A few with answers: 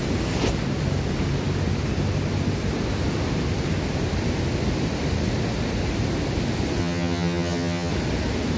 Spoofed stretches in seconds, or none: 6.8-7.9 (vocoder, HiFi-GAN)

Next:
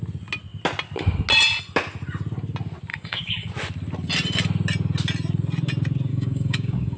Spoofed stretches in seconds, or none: 2.9-3.5 (codec, DAC); 6.1-7.0

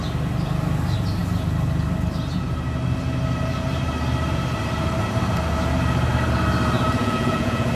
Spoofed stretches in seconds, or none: 7.0-7.7 (vocoder, Vocos)

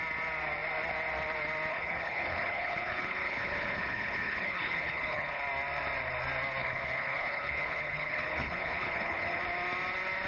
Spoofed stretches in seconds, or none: 1.7-5.4 (codec, HILCodec); 6.6-9.4

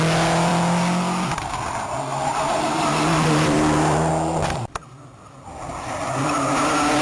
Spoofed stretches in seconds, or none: 2.1-4.1 (vocoder, BigVGAN v2)

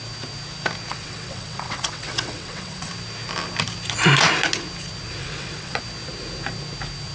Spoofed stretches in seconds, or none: 0.9-2.9 (vocoder, WaveNeXt); 5.2-5.8

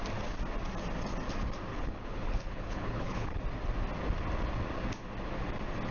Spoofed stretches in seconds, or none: 1.7-3.4 (codec, HILCodec)

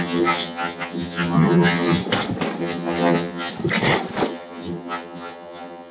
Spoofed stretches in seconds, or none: 0.0-2.0 (vocoder, HiFi-GAN); 2.6-3.5; 4.3-5.9